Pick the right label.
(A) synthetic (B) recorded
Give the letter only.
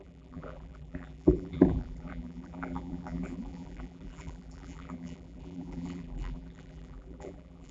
A